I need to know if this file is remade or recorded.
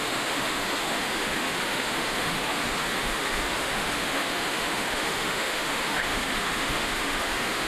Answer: remade